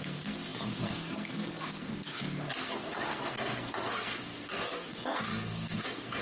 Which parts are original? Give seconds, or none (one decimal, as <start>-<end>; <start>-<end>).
none